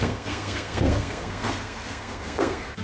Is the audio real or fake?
fake